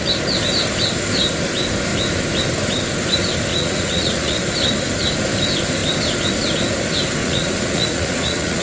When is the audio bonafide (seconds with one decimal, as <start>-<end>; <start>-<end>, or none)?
0.0-3.5; 4.4-7.2

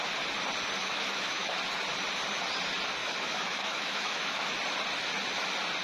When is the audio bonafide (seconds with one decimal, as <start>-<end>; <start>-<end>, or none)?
0.0-0.8; 1.6-3.0; 4.5-5.8